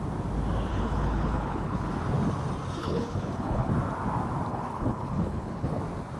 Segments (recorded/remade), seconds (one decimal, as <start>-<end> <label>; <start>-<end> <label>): 0.0-0.7 recorded; 0.7-1.9 remade; 1.9-2.8 recorded; 2.8-3.7 remade; 3.7-4.5 recorded; 4.5-5.8 remade; 5.8-6.2 recorded